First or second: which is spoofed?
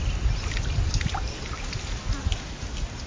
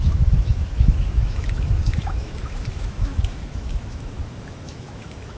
second